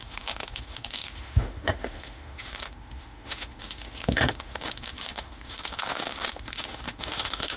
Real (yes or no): no